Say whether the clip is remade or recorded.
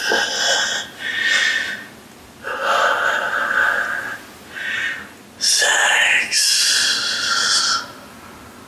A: recorded